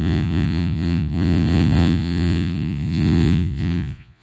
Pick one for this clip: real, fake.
fake